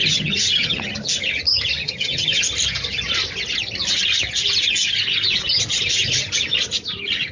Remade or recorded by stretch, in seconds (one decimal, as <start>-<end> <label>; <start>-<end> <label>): 0.0-0.9 remade; 0.9-1.8 recorded; 1.8-2.4 remade; 2.4-7.3 recorded

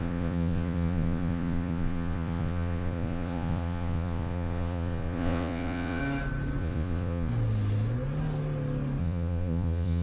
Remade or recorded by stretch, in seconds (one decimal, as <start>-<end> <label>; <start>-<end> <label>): 0.0-6.0 remade; 6.0-6.6 recorded; 6.6-7.3 remade; 7.3-9.0 recorded; 9.0-10.0 remade

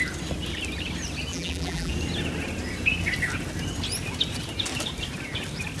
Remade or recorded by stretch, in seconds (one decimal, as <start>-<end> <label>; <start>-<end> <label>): 0.0-1.3 recorded; 1.3-1.9 remade; 1.9-5.8 recorded